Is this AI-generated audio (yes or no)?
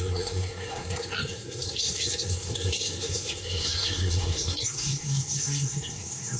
yes